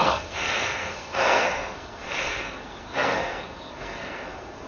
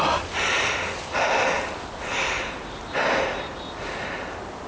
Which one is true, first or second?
second